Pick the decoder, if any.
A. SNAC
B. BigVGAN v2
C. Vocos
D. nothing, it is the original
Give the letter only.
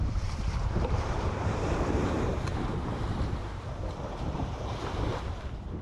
B